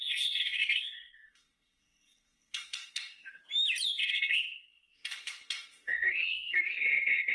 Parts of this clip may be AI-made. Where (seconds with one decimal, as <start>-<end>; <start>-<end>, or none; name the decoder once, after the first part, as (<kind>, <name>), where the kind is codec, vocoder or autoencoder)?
0.0-3.4 (codec, SNAC); 4.0-7.3